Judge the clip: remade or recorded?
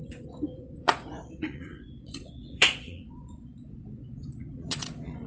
remade